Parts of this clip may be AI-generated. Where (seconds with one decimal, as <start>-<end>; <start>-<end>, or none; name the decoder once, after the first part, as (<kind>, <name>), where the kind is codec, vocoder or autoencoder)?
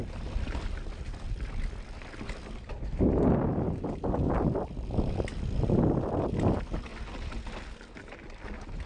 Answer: none